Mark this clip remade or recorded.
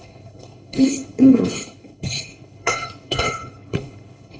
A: remade